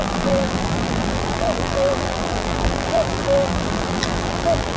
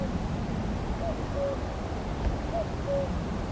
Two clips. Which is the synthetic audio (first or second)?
first